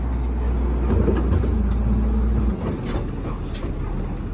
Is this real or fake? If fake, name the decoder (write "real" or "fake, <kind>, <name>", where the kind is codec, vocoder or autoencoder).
real